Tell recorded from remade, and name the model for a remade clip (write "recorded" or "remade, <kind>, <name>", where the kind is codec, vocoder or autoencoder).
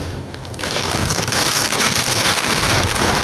remade, codec, DAC